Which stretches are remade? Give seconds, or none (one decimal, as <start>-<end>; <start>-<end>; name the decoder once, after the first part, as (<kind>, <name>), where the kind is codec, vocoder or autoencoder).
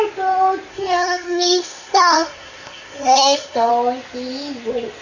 0.7-3.7 (codec, SNAC)